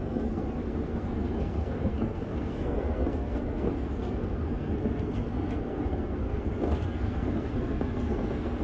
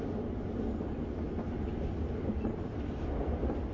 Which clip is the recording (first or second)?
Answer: second